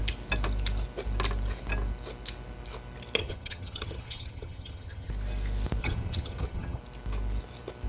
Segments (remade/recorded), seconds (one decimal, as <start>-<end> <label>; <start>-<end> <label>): 0.0-3.2 recorded; 3.2-5.1 remade; 5.1-5.8 recorded; 5.8-6.8 remade; 6.8-7.9 recorded